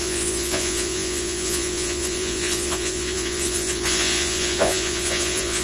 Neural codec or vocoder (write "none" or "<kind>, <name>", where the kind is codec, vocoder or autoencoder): vocoder, Vocos